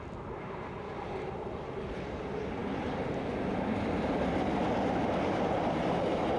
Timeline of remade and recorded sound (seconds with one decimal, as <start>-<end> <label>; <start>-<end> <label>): 0.0-6.4 recorded